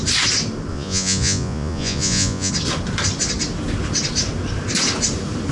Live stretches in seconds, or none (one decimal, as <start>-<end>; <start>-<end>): 0.0-0.7; 2.5-5.5